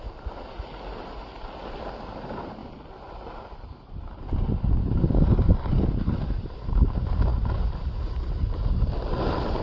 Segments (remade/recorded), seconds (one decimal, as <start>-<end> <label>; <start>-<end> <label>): 0.0-9.6 recorded